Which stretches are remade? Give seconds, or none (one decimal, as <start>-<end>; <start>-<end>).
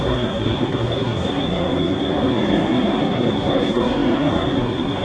0.0-5.0